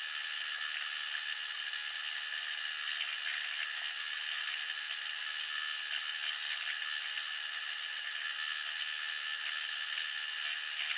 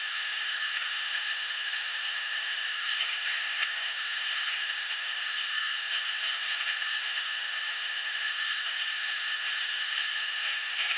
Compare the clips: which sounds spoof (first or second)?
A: second